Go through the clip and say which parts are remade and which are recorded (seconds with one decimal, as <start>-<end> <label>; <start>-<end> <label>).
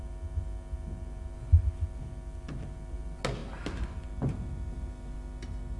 0.0-5.8 recorded